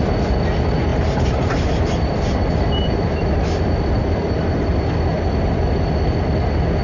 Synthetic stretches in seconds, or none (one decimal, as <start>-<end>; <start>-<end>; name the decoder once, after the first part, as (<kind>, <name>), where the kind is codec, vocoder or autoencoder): 0.9-3.4 (vocoder, BigVGAN v2); 4.0-4.9